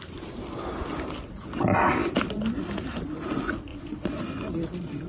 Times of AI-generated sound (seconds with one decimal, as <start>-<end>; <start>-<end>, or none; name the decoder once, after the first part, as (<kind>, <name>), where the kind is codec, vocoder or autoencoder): 3.7-4.2 (vocoder, Vocos)